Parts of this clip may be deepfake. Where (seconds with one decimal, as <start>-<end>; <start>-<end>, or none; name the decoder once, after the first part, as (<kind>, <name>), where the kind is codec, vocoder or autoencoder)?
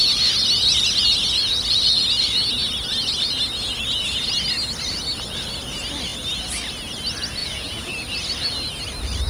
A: 7.4-7.9 (vocoder, Vocos)